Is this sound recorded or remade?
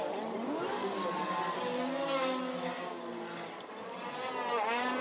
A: recorded